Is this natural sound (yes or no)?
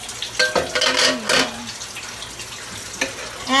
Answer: yes